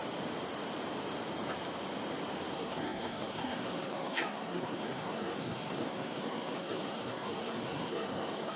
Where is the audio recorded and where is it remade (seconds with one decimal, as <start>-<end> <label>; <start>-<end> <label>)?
0.0-2.5 recorded; 2.5-8.6 remade